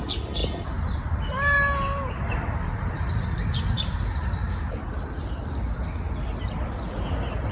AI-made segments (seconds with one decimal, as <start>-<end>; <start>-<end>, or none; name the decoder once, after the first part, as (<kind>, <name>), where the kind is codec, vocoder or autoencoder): none